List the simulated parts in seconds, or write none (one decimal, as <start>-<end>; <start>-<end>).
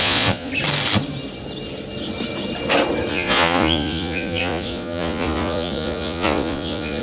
0.0-0.5; 3.1-7.0